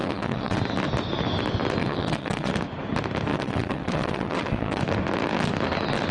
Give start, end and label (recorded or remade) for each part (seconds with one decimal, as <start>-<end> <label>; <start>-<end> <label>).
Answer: 0.0-0.6 remade; 0.6-1.8 recorded; 1.8-2.5 remade; 2.5-3.3 recorded; 3.3-4.8 remade; 4.8-6.1 recorded